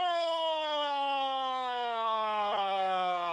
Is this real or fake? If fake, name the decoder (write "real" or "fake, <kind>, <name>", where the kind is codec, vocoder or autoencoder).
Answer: fake, codec, SNAC